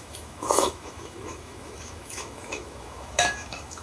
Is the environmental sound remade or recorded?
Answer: remade